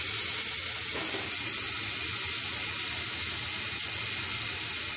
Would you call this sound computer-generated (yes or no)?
no